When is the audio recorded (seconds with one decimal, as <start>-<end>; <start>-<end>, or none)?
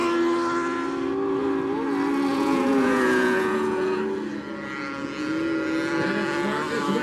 0.0-2.3; 4.0-7.0